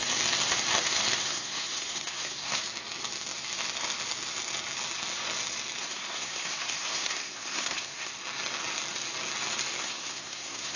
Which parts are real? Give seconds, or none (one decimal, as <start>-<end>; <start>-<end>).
0.0-1.2; 2.6-5.8; 8.1-9.8